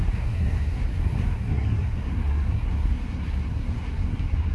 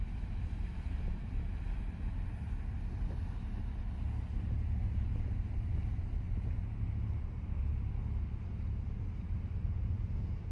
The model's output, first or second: first